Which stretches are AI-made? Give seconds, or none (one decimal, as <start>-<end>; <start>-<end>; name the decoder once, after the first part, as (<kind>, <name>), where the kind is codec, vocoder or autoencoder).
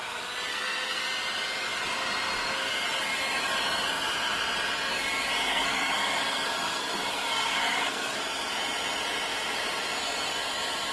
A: 0.5-1.0 (codec, SNAC); 5.4-8.2